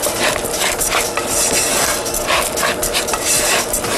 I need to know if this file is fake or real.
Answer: real